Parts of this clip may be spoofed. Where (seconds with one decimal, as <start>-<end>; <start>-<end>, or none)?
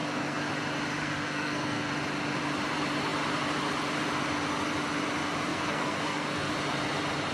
0.0-0.5; 1.0-1.9; 5.5-6.5